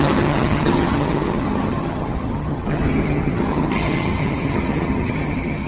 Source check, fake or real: fake